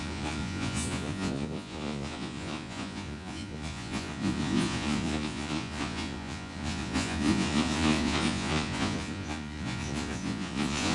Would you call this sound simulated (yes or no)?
yes